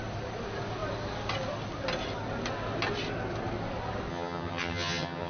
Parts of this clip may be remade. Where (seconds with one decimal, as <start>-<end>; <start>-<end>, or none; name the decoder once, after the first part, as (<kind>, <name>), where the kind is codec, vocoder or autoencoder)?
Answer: 4.1-5.3 (vocoder, HiFi-GAN)